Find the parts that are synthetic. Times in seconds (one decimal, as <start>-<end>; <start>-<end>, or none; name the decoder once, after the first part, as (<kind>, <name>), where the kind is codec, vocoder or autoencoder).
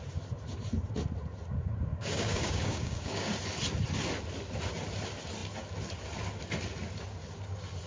1.9-3.3 (codec, DAC)